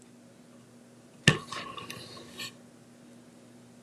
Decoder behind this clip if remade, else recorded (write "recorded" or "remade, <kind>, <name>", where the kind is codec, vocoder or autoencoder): recorded